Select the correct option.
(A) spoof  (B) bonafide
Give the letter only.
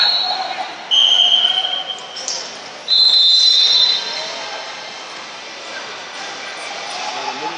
B